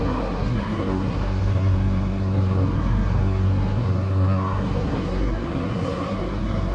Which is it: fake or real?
fake